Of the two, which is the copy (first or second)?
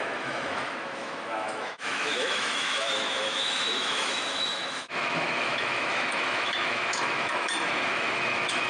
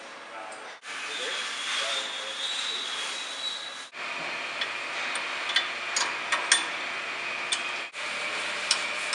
first